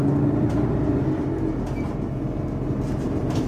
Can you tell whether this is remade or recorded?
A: recorded